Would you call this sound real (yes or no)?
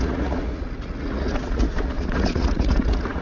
no